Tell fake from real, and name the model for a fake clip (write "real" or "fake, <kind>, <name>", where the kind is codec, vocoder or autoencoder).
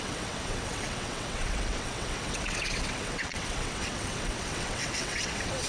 fake, vocoder, WaveNeXt